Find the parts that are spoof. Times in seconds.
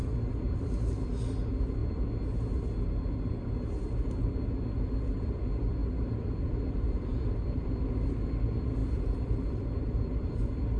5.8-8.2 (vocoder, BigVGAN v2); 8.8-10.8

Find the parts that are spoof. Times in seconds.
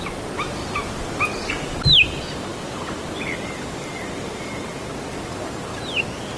0.0-0.6 (vocoder, BigVGAN v2); 1.5-4.7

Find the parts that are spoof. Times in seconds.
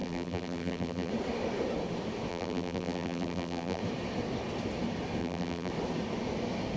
0.0-1.1 (vocoder, BigVGAN v2); 2.3-3.8; 5.2-5.7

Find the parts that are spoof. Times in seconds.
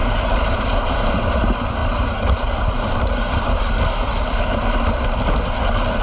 0.0-1.2 (vocoder, BigVGAN v2); 1.8-3.6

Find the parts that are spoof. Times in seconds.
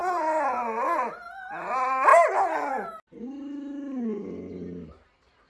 0.0-1.4 (vocoder, BigVGAN v2)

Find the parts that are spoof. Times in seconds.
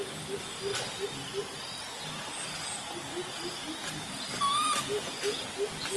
none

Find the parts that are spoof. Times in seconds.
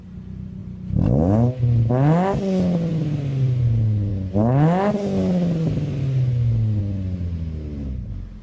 none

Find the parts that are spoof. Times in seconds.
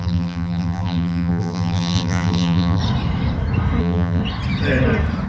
0.0-2.8 (vocoder, BigVGAN v2); 3.8-4.2